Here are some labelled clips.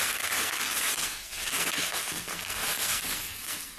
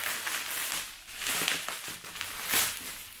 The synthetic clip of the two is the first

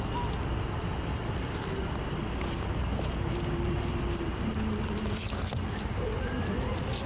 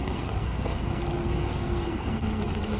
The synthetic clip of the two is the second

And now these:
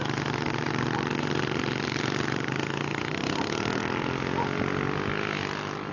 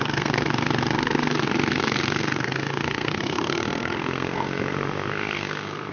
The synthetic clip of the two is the second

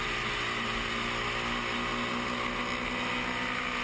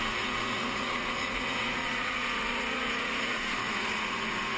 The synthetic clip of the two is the second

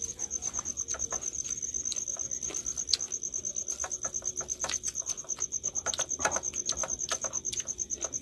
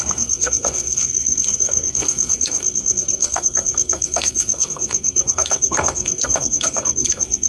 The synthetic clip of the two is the second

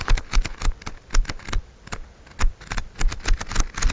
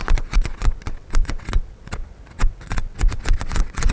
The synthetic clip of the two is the second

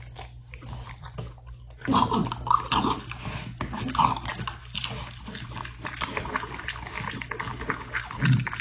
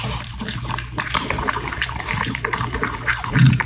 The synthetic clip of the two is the second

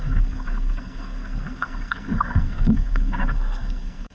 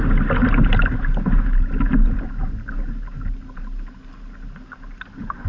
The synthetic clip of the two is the first